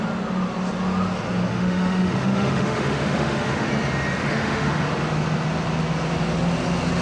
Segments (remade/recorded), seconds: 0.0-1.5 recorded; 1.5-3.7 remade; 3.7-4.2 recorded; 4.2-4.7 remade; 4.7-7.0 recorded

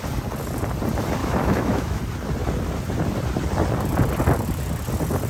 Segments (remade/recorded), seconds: 0.0-1.2 recorded; 1.2-2.0 remade; 2.0-5.3 recorded

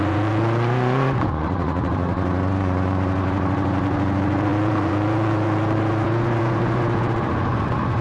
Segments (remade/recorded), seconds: 0.0-8.0 remade

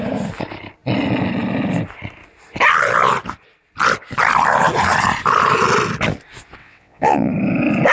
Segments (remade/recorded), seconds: 0.0-6.6 recorded; 6.6-7.3 remade; 7.3-7.9 recorded

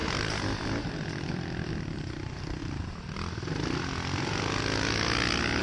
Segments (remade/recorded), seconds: 0.0-1.7 remade; 1.7-2.6 recorded; 2.6-5.6 remade

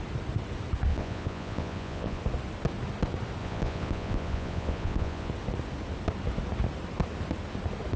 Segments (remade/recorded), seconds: 0.0-0.9 recorded; 0.9-2.2 remade; 2.2-3.4 recorded; 3.4-5.3 remade; 5.3-8.0 recorded

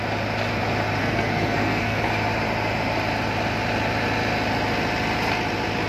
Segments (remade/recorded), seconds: 0.0-1.0 recorded; 1.0-2.1 remade; 2.1-5.9 recorded